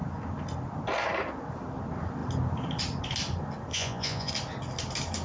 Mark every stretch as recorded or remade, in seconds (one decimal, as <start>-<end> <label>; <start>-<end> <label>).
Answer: 0.0-3.7 recorded; 3.7-4.3 remade; 4.3-5.2 recorded